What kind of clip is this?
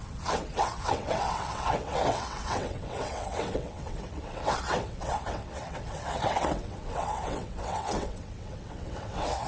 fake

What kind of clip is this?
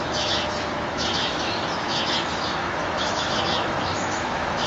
fake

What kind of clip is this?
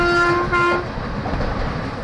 real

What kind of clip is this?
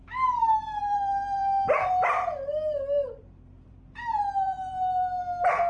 fake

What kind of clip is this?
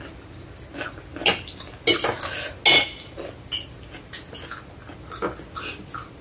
real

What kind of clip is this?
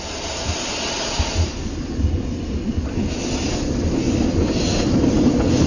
real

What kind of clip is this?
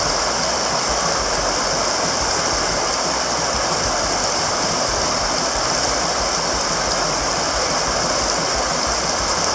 real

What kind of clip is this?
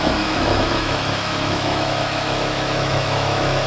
fake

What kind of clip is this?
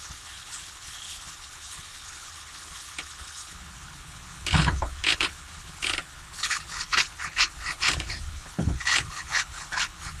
fake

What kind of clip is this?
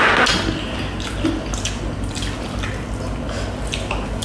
real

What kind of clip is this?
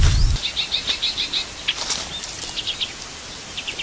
fake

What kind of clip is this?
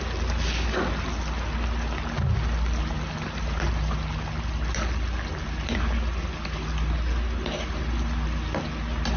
real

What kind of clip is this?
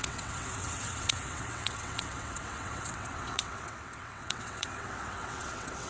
fake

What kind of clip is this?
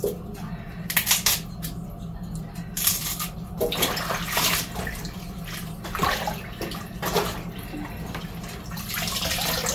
real